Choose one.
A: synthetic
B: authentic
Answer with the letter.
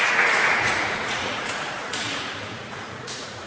A